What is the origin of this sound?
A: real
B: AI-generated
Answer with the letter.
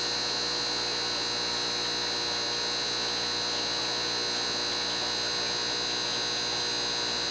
A